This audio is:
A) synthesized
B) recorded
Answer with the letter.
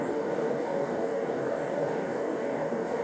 A